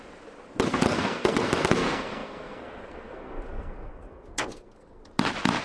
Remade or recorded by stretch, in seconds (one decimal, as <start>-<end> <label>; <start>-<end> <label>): 0.0-0.7 recorded; 0.7-5.0 remade; 5.0-5.6 recorded